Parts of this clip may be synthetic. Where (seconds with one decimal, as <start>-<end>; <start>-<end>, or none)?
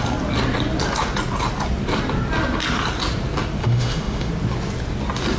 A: 3.6-4.3